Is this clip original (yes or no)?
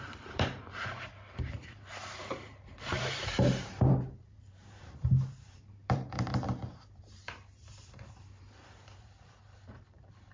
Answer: no